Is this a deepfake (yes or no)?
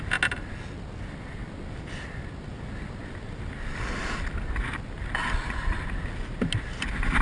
no